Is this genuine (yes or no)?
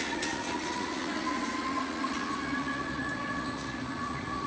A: no